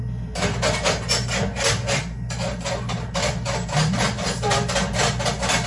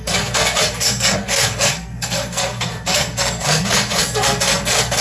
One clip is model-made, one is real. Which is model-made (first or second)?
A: second